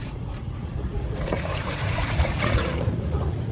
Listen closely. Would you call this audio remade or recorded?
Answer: remade